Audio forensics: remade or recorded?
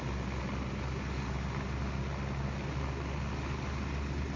recorded